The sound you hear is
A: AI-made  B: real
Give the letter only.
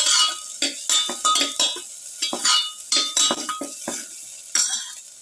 B